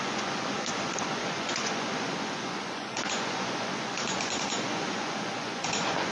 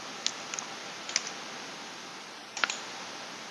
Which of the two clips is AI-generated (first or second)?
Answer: first